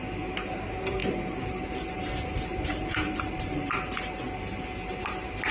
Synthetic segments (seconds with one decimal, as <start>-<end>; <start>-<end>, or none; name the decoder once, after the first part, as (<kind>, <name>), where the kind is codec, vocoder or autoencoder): none